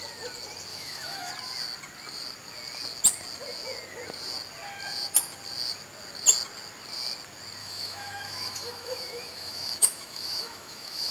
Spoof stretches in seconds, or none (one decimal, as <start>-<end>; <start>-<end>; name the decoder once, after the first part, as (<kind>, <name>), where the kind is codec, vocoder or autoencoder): 0.7-1.3 (autoencoder, DAC-VAE); 7.6-11.1